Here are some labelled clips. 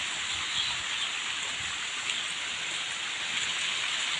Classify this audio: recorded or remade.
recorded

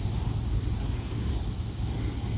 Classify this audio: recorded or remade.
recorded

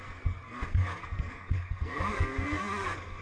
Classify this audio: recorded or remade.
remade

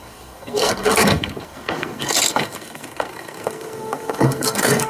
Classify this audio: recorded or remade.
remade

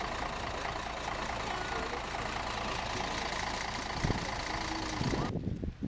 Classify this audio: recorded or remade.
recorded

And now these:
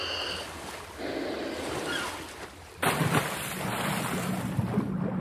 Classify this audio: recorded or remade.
recorded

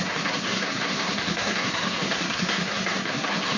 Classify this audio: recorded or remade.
remade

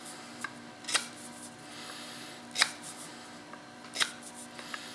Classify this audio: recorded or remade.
recorded